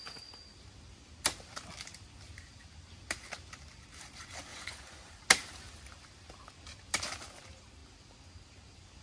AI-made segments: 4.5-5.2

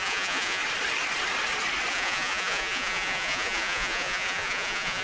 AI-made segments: 0.0-0.6; 1.9-5.0

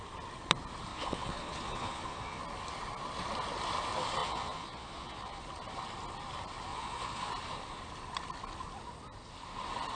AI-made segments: 0.9-2.4; 4.2-5.4; 6.7-7.3

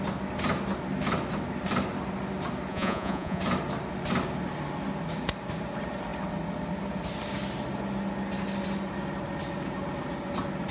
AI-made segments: 2.7-3.4